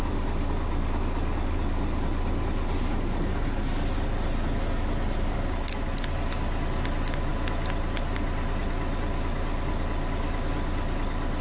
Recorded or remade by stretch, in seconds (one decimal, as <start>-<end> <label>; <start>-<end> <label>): 0.0-11.4 recorded